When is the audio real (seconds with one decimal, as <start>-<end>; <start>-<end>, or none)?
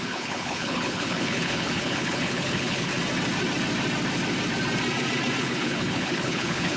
2.9-5.4